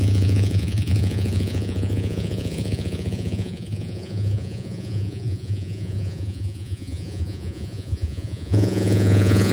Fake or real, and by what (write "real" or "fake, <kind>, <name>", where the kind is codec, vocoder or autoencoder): fake, vocoder, Vocos